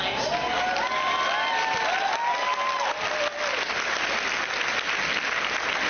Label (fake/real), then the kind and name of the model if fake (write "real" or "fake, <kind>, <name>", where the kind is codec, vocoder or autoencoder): real